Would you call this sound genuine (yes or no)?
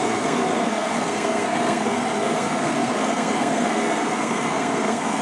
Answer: no